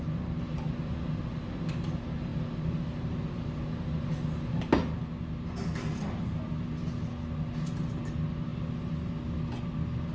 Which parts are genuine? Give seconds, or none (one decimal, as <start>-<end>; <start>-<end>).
0.0-10.1